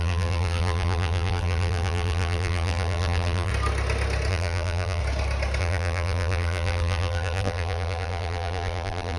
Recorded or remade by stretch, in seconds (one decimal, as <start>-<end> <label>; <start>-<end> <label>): 0.0-3.5 remade; 3.5-4.3 recorded; 4.3-5.0 remade; 5.0-5.6 recorded; 5.6-9.2 remade